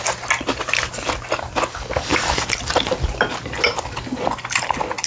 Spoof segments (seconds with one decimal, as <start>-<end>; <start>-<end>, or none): 2.1-4.0